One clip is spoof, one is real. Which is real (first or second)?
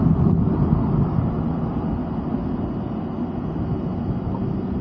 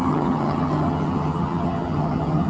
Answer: first